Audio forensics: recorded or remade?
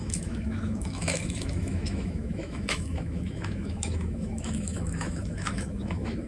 remade